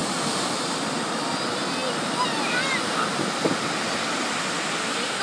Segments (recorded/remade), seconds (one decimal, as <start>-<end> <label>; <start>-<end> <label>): 0.0-5.2 recorded